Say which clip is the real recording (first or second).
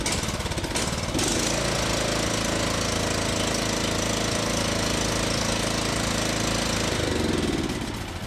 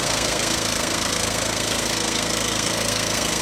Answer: first